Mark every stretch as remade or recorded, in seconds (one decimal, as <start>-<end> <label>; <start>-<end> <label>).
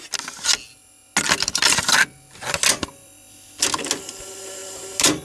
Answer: 0.0-5.2 recorded